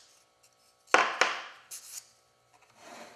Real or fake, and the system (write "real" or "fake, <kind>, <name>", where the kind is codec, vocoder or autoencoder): real